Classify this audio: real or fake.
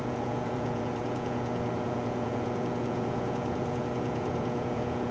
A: fake